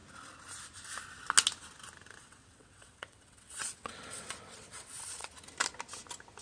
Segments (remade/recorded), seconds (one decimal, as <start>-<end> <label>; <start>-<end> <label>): 0.0-2.2 recorded; 2.2-5.3 remade; 5.3-6.4 recorded